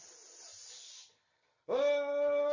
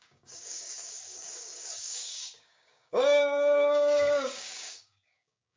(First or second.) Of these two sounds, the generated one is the second